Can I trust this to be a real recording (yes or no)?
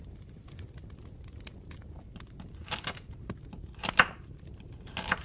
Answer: yes